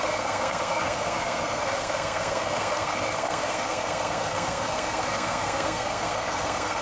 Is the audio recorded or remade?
remade